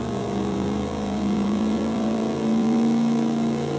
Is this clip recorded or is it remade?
remade